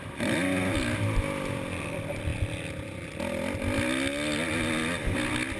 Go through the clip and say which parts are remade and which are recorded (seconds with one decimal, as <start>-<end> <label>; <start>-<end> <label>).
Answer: 0.0-5.6 recorded